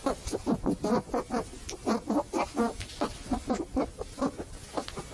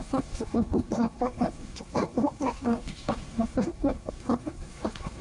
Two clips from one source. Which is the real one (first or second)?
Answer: first